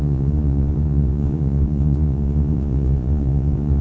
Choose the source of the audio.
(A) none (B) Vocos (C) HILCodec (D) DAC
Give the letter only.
B